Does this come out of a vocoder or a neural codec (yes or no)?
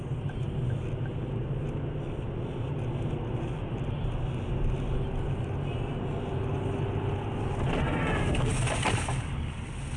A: no